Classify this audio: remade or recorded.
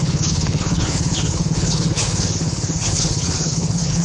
remade